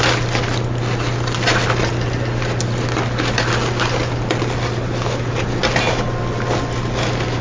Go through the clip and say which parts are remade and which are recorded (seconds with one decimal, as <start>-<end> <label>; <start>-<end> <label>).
0.0-7.4 recorded